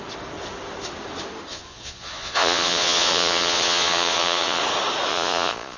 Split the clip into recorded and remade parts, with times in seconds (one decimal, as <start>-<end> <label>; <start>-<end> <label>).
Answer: 0.0-1.5 recorded; 1.5-4.6 remade; 4.6-5.1 recorded; 5.1-5.8 remade